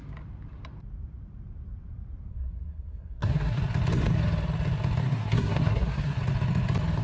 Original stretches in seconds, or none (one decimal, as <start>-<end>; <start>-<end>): 0.0-2.3; 3.6-5.0; 6.2-7.0